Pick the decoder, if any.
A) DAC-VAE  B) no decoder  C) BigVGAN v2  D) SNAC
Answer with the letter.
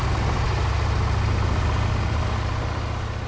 B